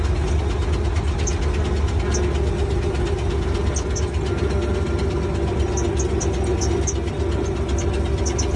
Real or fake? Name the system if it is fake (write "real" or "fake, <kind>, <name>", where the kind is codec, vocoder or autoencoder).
real